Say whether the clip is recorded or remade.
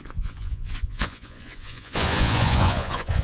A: remade